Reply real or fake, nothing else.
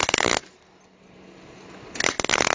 real